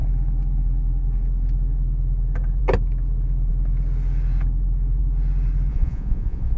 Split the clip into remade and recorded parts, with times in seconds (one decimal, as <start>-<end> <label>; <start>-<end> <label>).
0.0-5.7 recorded; 5.7-6.6 remade